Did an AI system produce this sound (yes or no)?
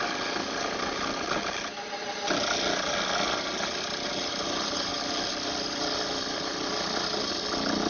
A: no